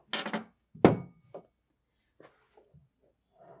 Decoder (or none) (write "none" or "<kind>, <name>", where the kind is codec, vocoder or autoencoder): none